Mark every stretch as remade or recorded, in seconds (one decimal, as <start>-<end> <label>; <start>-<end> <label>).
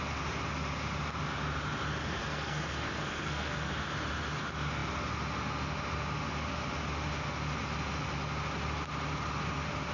0.0-2.2 recorded; 2.2-3.7 remade; 3.7-9.9 recorded